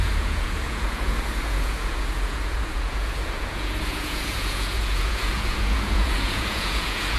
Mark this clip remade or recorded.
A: remade